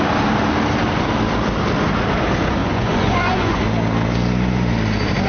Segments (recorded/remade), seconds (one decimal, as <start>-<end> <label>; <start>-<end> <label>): 0.0-2.6 recorded; 2.6-3.6 remade; 3.6-5.3 recorded